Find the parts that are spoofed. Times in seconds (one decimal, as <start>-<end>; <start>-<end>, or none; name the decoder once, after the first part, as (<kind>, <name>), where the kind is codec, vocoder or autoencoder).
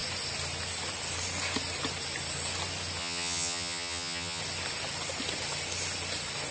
3.0-4.4 (vocoder, HiFi-GAN)